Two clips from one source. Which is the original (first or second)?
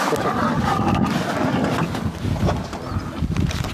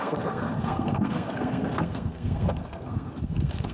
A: first